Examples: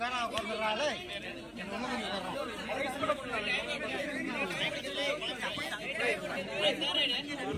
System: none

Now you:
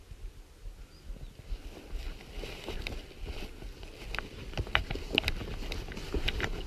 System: none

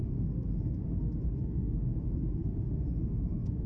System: autoencoder, DAC-VAE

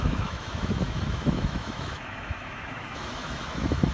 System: autoencoder, DAC-VAE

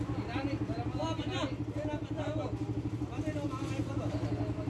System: none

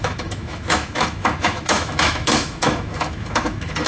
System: autoencoder, DAC-VAE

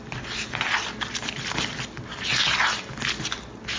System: none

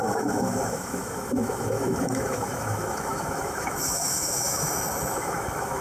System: autoencoder, DAC-VAE